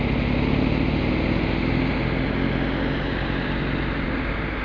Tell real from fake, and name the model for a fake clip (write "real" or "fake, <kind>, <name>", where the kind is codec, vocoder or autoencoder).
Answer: real